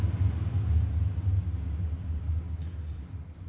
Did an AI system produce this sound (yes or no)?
no